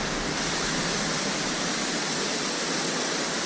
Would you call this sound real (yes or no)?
yes